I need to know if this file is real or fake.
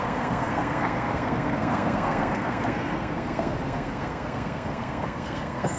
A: fake